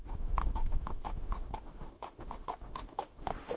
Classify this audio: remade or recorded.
remade